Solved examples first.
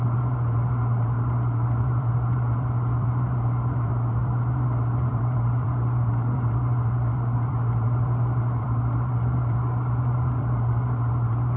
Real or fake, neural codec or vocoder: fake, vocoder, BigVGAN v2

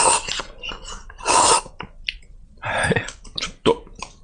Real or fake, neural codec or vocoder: fake, vocoder, BigVGAN v2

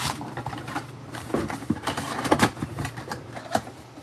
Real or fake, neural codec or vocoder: fake, vocoder, BigVGAN v2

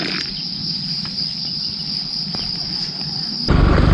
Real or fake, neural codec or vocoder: fake, vocoder, BigVGAN v2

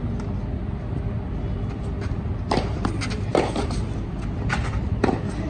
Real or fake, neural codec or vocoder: real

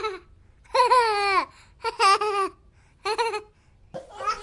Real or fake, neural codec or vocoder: real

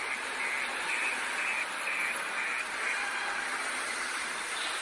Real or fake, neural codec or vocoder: fake, vocoder, BigVGAN v2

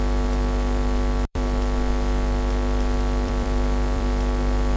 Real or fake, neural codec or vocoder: fake, vocoder, BigVGAN v2